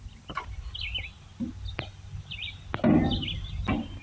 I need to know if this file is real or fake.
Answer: real